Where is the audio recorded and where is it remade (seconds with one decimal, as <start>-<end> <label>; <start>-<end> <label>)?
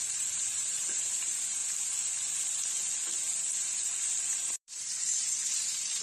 0.0-1.6 remade; 1.6-4.2 recorded; 4.2-6.0 remade